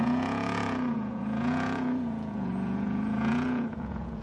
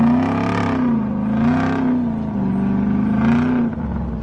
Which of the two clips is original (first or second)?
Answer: second